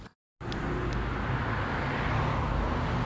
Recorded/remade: recorded